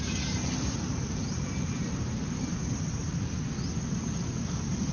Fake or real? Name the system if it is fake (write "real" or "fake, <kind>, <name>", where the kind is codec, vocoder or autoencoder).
real